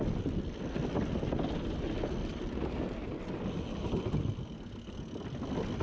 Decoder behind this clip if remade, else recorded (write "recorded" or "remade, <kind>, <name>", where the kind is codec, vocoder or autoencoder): recorded